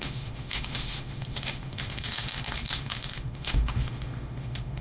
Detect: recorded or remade remade